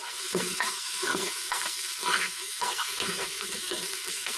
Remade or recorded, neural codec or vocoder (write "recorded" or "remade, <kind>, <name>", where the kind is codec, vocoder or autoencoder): remade, codec, SNAC